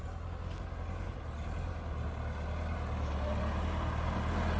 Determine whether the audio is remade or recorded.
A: recorded